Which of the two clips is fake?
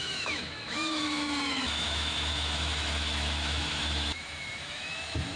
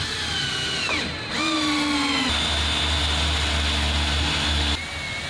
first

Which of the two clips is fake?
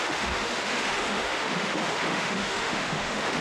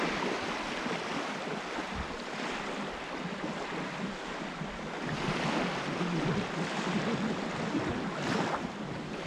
first